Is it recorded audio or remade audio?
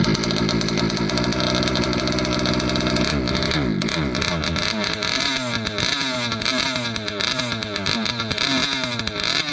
recorded